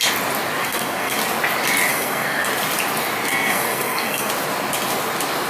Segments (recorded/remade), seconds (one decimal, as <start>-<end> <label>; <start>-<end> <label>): 0.0-0.6 recorded; 0.6-1.2 remade; 1.2-1.9 recorded; 1.9-2.5 remade; 2.5-3.3 recorded; 3.3-4.3 remade; 4.3-5.5 recorded